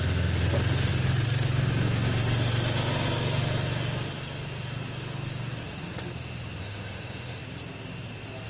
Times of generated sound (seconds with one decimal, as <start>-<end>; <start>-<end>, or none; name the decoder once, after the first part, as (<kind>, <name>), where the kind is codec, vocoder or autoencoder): 6.6-7.4 (autoencoder, DAC-VAE)